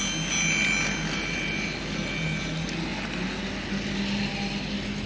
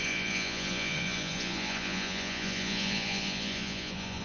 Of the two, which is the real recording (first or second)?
first